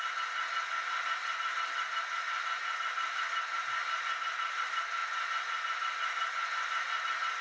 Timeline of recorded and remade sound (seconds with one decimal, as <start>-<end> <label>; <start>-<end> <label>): 0.0-7.4 recorded